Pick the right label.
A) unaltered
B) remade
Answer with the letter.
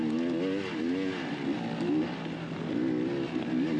A